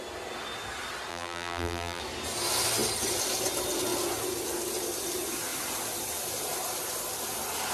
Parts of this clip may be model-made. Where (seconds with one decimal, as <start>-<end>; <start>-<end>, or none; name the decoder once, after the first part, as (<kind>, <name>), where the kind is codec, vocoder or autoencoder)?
1.1-2.0 (vocoder, BigVGAN v2)